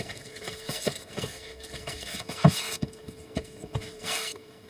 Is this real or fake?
fake